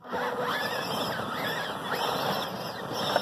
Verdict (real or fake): real